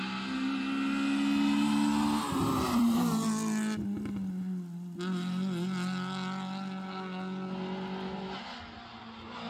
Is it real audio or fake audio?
real